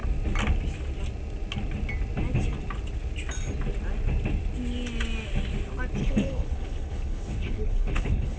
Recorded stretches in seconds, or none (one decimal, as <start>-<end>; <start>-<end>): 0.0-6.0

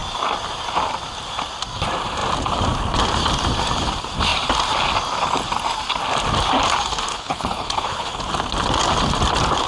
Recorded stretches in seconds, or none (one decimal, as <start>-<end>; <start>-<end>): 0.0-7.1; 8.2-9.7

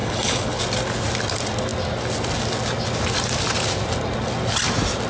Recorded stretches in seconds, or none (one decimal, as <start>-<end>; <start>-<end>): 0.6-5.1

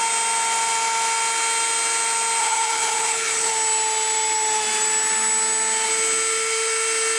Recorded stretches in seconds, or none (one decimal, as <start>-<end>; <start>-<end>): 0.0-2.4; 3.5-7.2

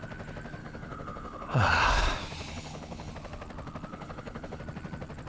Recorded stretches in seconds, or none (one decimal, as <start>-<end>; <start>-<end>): 0.0-0.6; 1.7-2.5; 3.1-3.9; 4.6-5.3